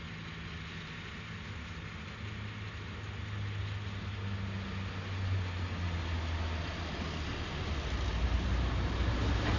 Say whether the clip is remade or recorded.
recorded